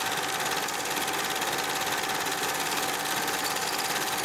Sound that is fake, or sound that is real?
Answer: real